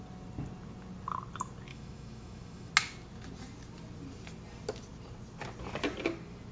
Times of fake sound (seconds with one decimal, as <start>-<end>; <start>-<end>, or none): 1.7-2.7